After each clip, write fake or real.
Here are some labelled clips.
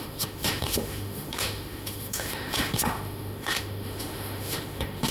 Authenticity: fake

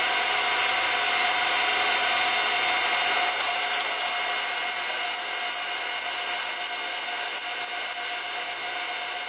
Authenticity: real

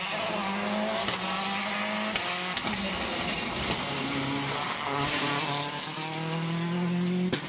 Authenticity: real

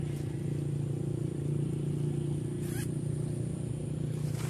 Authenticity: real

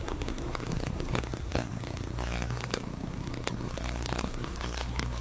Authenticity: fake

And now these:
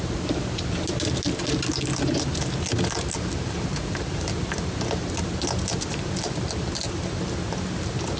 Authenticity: real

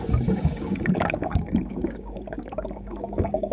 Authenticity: fake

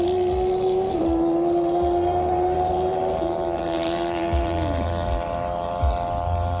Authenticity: fake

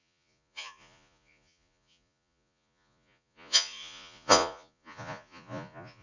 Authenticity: fake